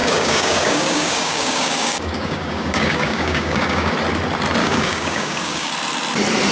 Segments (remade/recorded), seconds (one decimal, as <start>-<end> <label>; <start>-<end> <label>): 0.0-3.9 remade; 3.9-4.6 recorded; 4.6-5.7 remade; 5.7-6.5 recorded

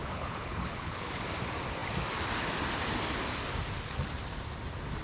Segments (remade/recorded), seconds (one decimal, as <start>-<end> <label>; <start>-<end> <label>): 0.0-1.2 remade; 1.2-5.0 recorded

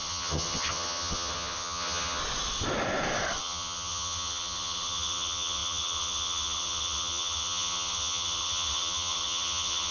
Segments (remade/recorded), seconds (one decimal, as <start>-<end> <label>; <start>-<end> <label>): 0.0-2.2 remade; 2.2-3.4 recorded; 3.4-9.9 remade